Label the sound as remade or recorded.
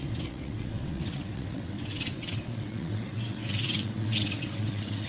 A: remade